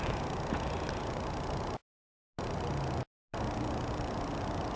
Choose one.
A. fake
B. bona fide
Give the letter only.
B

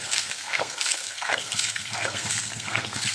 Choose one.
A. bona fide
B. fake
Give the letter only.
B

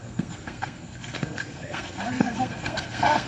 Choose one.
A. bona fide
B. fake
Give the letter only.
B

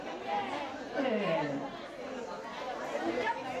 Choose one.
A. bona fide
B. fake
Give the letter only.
A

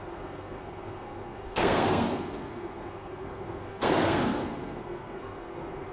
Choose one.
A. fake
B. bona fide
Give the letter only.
A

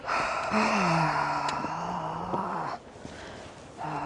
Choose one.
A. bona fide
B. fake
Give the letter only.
A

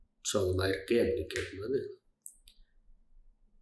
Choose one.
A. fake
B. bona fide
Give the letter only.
B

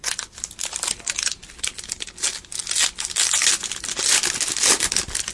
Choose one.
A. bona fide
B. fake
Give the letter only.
A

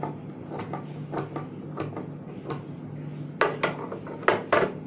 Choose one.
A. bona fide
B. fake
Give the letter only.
A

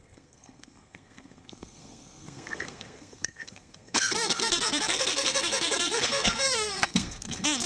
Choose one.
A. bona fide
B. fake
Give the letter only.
B